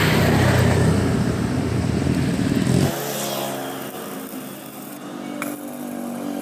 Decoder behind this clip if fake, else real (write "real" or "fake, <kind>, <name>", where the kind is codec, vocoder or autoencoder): real